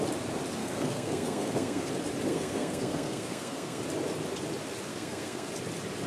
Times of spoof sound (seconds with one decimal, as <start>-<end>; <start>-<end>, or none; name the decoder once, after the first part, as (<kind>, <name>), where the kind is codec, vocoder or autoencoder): 0.6-1.9 (codec, SNAC); 2.3-3.8; 4.9-5.5